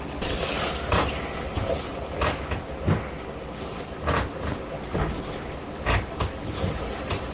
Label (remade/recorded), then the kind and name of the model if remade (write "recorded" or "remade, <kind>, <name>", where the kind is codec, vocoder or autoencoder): recorded